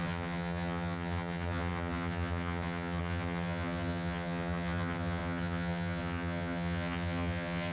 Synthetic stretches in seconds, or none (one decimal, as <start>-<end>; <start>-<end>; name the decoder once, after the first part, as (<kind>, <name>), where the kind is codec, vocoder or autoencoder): 0.0-7.7 (vocoder, HiFi-GAN)